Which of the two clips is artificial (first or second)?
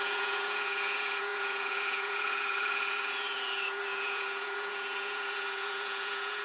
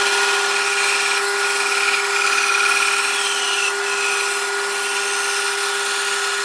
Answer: first